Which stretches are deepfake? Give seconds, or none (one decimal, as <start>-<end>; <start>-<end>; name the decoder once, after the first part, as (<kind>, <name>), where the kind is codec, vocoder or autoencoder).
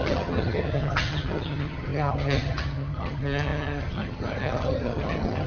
0.0-5.5 (vocoder, HiFi-GAN)